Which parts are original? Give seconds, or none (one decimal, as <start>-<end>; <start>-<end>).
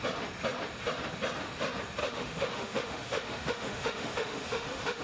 0.0-2.0